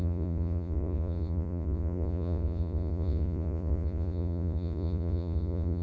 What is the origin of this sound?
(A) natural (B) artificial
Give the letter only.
B